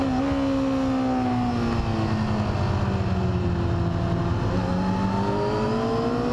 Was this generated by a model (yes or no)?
no